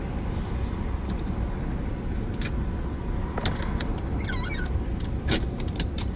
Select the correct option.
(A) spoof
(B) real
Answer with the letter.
B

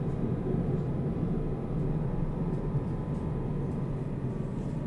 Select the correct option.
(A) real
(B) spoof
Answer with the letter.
A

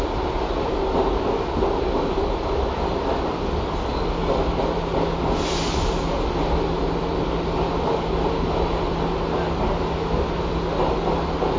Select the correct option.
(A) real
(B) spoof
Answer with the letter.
A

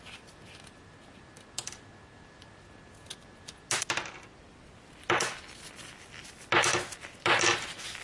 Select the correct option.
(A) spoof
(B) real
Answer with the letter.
B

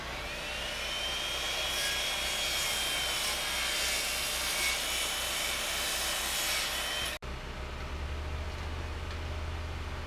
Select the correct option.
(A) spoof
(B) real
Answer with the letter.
B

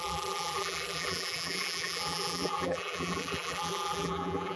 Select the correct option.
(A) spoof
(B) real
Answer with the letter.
A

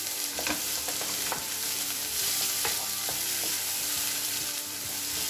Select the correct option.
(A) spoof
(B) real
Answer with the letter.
A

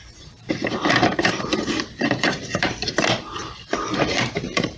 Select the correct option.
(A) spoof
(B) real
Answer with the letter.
A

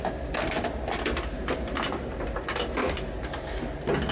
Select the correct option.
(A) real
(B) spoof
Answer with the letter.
A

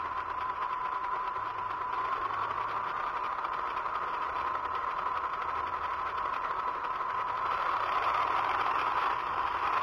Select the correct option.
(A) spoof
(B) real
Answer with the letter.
A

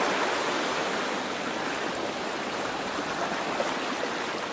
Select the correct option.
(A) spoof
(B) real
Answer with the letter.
B